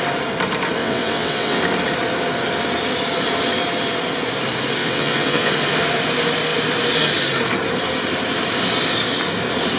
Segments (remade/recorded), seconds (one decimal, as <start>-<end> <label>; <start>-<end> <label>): 0.0-0.8 recorded; 0.8-1.6 remade; 1.6-4.8 recorded; 4.8-5.5 remade; 5.5-9.8 recorded

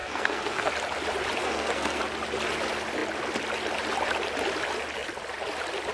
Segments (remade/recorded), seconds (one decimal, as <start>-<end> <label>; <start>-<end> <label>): 0.0-0.7 remade; 0.7-1.4 recorded; 1.4-2.0 remade; 2.0-5.9 recorded